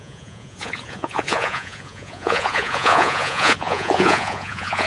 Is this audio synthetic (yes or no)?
yes